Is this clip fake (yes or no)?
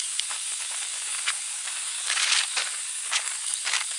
yes